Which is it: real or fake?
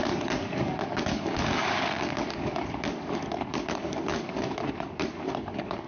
fake